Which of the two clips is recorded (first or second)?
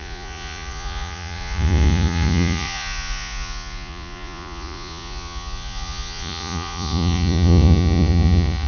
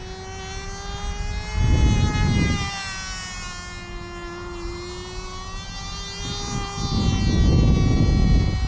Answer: second